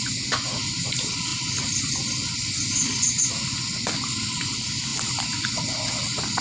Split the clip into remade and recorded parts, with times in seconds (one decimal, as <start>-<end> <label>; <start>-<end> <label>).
0.0-6.4 recorded